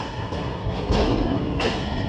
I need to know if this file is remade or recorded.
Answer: remade